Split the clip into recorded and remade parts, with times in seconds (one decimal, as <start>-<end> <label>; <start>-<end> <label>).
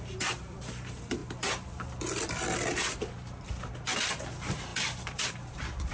0.0-1.2 remade; 1.2-4.2 recorded; 4.2-5.9 remade